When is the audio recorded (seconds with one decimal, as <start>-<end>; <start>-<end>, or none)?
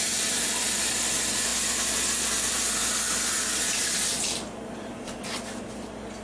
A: 0.0-6.2